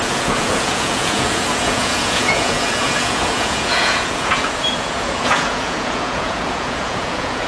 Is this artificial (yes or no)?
yes